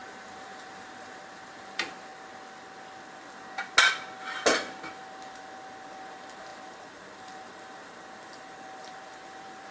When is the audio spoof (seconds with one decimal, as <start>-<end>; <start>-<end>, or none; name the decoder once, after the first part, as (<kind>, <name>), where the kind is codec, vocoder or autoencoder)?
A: 0.0-2.1 (vocoder, BigVGAN v2); 6.1-9.7